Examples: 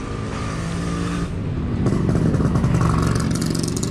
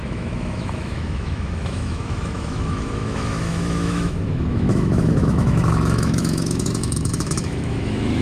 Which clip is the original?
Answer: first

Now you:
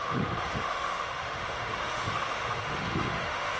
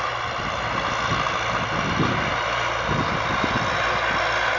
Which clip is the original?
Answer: second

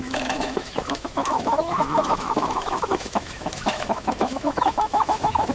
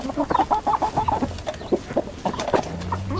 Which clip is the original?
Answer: second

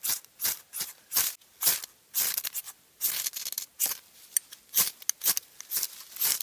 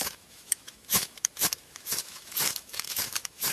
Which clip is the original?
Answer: first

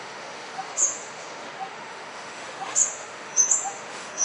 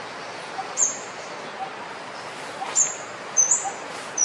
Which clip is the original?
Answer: second